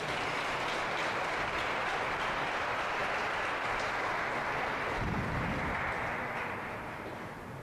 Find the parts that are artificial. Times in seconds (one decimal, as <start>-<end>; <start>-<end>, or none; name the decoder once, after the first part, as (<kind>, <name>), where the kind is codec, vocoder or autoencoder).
none